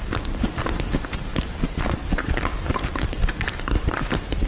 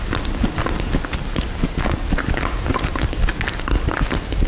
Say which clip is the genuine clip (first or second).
second